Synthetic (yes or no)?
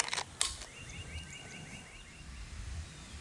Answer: no